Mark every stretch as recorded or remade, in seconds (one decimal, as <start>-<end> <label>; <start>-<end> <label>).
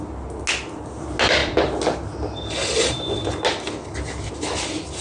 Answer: 0.0-5.0 recorded